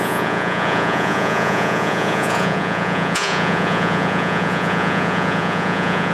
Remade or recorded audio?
remade